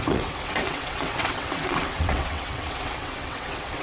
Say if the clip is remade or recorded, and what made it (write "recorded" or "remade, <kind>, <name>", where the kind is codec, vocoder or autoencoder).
remade, vocoder, WaveNeXt